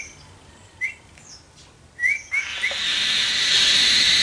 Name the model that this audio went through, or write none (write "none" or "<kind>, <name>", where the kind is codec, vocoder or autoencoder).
none